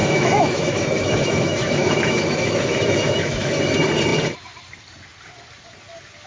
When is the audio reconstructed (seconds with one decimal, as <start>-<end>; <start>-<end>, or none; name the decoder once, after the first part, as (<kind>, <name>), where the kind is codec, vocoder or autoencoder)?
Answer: 0.0-3.6 (autoencoder, DAC-VAE)